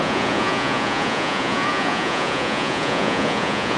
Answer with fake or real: fake